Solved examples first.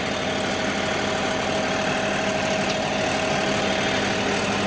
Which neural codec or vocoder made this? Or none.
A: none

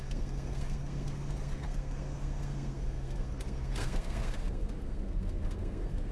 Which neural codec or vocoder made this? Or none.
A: codec, SNAC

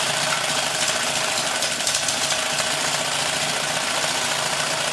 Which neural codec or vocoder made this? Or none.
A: none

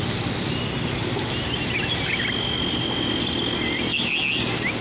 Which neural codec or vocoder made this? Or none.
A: none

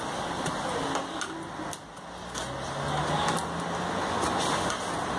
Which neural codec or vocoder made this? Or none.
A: none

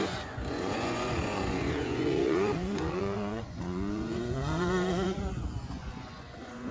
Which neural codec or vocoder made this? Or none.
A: vocoder, Vocos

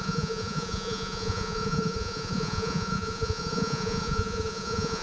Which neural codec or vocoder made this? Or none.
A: vocoder, Vocos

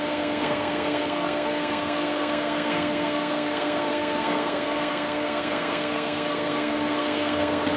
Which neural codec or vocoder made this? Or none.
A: codec, SNAC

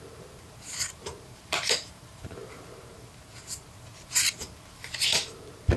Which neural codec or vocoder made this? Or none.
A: vocoder, BigVGAN v2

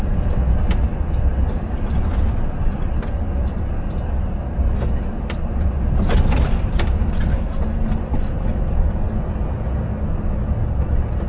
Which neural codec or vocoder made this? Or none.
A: none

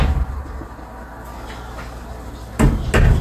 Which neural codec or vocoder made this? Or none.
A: none